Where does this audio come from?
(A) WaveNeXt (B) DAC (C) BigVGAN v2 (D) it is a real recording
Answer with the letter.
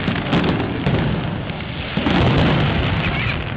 D